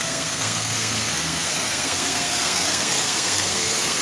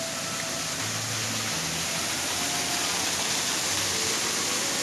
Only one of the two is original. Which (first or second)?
second